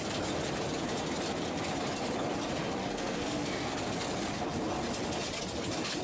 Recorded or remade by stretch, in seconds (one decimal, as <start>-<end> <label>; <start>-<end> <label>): 0.0-2.8 recorded; 2.8-3.7 remade; 3.7-6.0 recorded